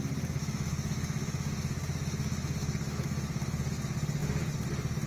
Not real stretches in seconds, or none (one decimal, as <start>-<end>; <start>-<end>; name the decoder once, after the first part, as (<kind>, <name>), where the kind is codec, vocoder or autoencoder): 0.4-3.5 (autoencoder, DAC-VAE)